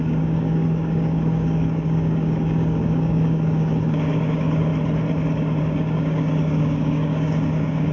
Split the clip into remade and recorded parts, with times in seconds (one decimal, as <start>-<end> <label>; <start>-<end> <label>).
0.0-4.7 remade; 4.7-5.6 recorded; 5.6-7.9 remade

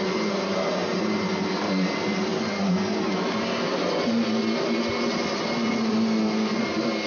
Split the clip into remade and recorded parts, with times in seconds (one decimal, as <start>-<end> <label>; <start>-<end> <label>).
0.0-7.1 recorded

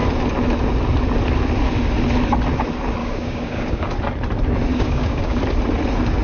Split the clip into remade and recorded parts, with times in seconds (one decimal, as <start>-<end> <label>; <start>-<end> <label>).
0.0-3.0 recorded; 3.0-3.9 remade; 3.9-4.7 recorded; 4.7-5.4 remade; 5.4-6.2 recorded

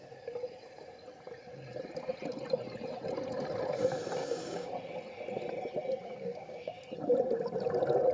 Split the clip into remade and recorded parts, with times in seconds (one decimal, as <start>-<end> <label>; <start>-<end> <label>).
0.0-4.2 recorded; 4.2-4.7 remade; 4.7-6.0 recorded; 6.0-6.8 remade; 6.8-8.1 recorded